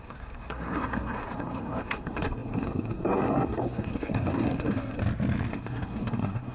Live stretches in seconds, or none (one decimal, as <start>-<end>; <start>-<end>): 5.0-5.5